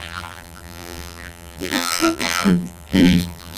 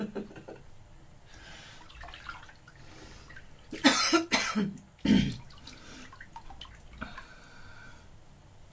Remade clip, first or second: first